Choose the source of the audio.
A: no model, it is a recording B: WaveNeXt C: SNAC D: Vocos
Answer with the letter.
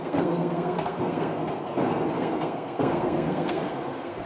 C